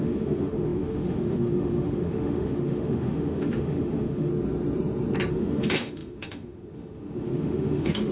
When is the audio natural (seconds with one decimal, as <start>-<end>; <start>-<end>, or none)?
4.3-5.3